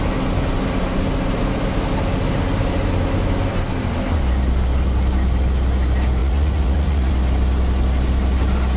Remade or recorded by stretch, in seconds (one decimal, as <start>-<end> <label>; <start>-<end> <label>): 0.0-6.2 recorded; 6.2-7.1 remade; 7.1-8.8 recorded